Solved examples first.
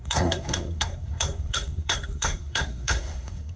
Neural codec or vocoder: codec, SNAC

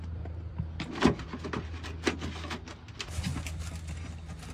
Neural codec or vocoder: none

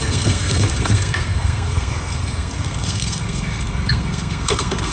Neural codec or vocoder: codec, SNAC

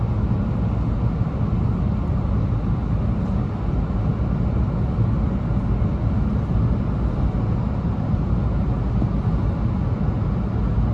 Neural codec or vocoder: none